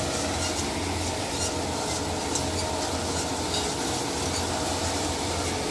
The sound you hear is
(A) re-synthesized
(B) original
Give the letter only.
B